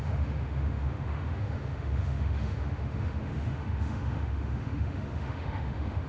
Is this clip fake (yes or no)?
yes